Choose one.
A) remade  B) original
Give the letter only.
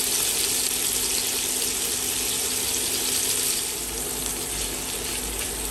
B